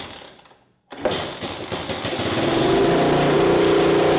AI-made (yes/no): no